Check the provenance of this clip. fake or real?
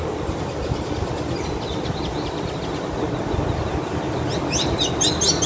real